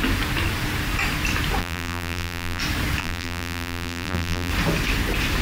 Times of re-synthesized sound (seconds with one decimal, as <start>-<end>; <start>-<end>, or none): 1.6-2.6; 3.0-4.5